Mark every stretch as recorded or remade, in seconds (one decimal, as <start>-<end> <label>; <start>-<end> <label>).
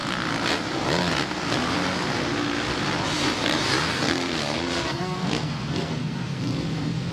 0.0-3.9 recorded; 3.9-7.1 remade